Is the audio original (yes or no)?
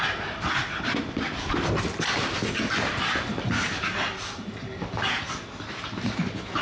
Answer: yes